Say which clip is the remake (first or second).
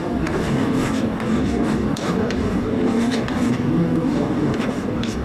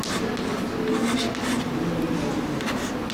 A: first